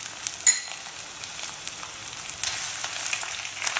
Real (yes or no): yes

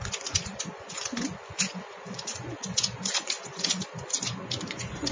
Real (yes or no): no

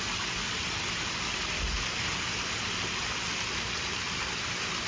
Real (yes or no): yes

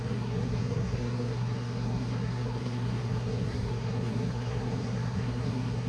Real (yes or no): no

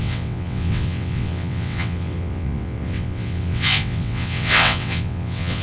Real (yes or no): no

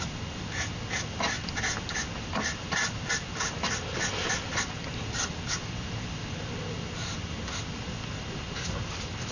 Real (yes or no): yes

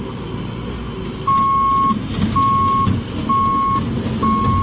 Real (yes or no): yes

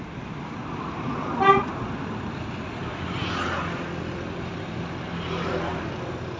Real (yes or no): yes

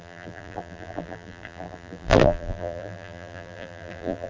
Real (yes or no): no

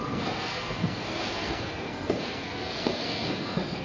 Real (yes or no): no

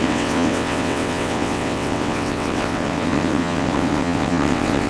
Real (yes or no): no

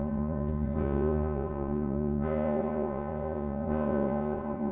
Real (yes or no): no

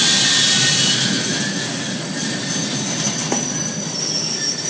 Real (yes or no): yes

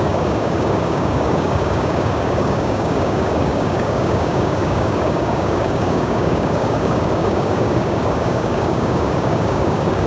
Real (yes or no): no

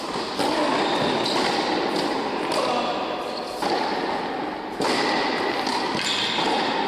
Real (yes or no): yes